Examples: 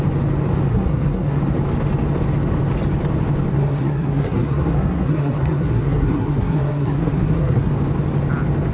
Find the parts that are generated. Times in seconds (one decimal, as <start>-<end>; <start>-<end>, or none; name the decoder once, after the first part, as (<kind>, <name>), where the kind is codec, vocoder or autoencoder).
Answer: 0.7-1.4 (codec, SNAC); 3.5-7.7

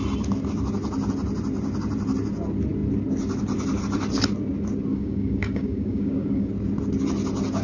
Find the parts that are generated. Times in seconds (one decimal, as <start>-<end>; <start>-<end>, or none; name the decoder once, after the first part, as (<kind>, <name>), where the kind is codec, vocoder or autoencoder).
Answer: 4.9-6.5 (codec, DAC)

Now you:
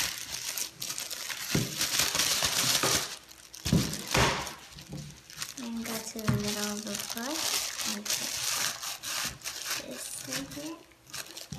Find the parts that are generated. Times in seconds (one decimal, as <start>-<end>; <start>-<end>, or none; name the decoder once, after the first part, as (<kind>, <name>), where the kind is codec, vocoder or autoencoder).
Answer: none